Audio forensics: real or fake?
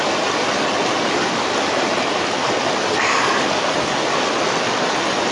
real